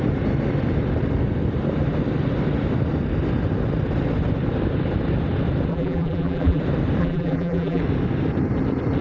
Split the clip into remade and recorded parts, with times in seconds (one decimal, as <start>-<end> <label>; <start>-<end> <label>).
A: 0.0-5.7 recorded; 5.7-6.6 remade; 6.6-7.0 recorded; 7.0-7.8 remade; 7.8-9.0 recorded

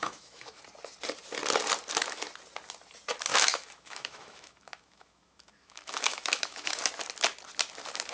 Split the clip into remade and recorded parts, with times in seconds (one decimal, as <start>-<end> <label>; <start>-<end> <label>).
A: 0.0-0.6 remade; 0.6-3.3 recorded; 3.3-6.9 remade; 6.9-8.1 recorded

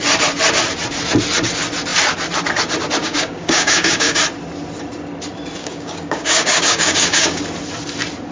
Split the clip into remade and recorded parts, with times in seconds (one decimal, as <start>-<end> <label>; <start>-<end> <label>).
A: 0.0-3.0 recorded; 3.0-4.2 remade; 4.2-5.6 recorded; 5.6-7.4 remade; 7.4-8.3 recorded

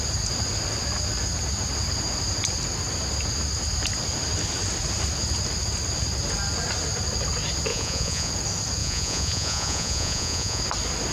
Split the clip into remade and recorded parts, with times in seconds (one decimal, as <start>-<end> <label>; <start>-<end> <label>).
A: 0.0-7.7 recorded; 7.7-8.3 remade; 8.3-8.8 recorded; 8.8-10.6 remade; 10.6-11.1 recorded

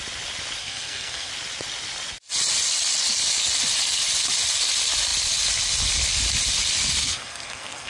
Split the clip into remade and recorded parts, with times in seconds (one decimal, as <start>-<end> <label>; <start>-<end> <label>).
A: 0.0-0.6 recorded; 0.6-1.3 remade; 1.3-7.0 recorded; 7.0-7.9 remade

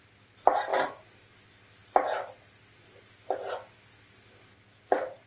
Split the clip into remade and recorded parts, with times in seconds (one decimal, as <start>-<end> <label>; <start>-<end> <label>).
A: 0.0-5.3 recorded